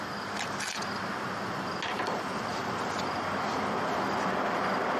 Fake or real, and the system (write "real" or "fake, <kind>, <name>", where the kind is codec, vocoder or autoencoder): real